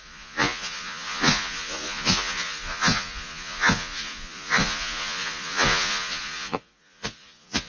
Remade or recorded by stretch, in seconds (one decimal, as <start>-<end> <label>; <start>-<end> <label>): 0.0-7.7 remade